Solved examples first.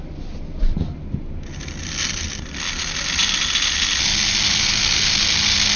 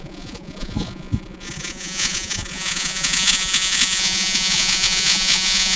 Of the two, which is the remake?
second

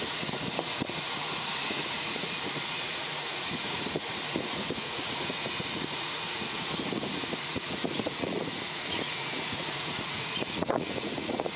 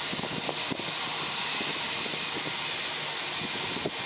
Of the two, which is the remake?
first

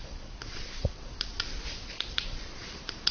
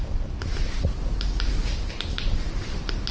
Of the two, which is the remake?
first